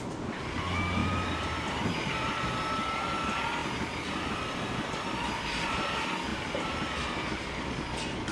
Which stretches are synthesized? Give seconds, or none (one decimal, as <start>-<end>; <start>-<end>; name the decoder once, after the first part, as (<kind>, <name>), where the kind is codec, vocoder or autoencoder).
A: 1.0-2.1 (vocoder, BigVGAN v2); 6.3-7.7